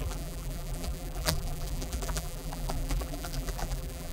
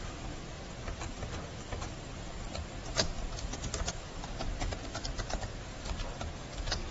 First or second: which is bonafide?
second